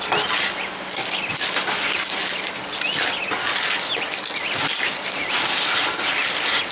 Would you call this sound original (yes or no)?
yes